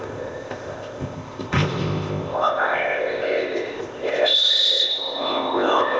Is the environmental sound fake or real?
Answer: fake